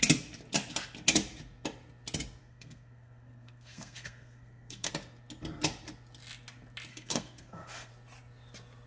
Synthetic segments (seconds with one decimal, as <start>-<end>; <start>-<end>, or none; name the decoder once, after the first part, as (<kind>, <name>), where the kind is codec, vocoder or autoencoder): 2.4-4.9 (codec, SNAC); 6.9-7.9